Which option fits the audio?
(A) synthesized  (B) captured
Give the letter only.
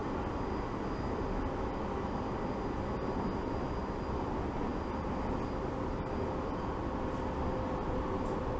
B